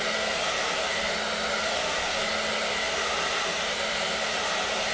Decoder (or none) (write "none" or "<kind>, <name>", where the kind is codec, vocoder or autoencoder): none